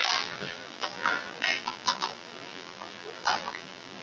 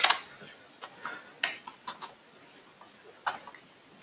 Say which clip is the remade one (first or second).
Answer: first